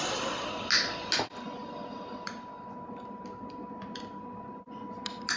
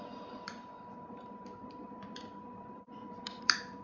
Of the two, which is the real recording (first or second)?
first